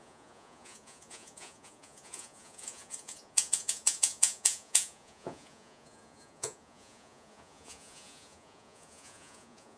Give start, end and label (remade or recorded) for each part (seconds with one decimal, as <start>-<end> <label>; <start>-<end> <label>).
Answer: 0.0-9.8 remade